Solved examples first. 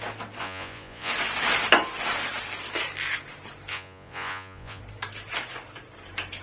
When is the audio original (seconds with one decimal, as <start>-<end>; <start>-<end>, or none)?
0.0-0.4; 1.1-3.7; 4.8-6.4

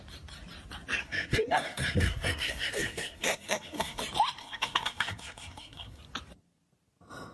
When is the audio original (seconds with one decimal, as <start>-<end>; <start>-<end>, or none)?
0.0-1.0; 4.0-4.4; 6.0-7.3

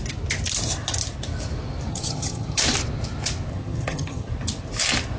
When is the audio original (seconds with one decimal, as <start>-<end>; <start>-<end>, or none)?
0.0-1.9; 2.6-3.5; 4.3-5.2